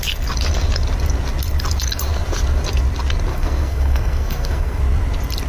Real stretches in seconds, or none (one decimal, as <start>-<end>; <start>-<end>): 0.0-3.3; 4.8-5.5